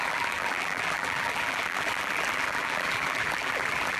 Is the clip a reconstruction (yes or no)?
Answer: yes